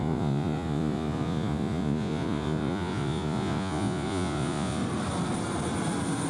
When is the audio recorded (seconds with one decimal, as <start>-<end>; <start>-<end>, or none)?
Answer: 4.8-6.3